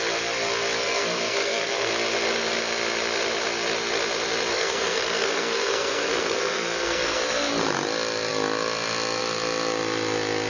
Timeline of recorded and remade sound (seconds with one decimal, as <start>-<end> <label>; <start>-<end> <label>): 0.0-0.8 recorded; 0.8-1.9 remade; 1.9-4.5 recorded; 4.5-7.5 remade; 7.5-10.5 recorded